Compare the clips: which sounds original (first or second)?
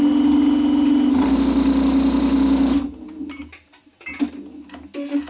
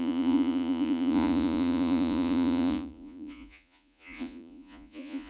first